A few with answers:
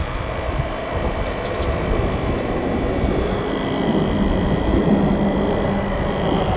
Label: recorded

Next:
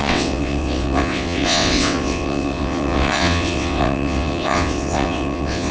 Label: remade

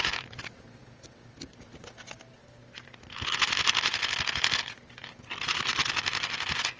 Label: recorded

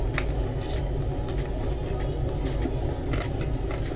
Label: recorded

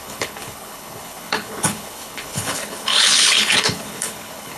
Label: remade